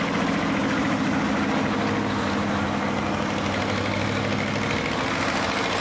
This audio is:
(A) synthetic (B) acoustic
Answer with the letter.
B